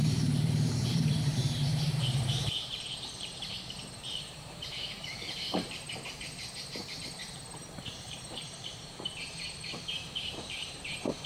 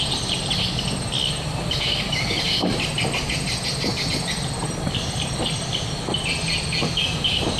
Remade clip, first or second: first